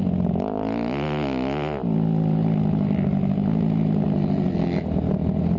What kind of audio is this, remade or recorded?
recorded